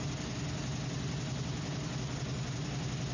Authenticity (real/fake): real